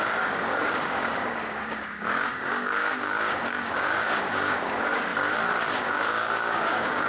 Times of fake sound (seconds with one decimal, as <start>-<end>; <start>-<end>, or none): 0.0-5.1; 5.7-7.1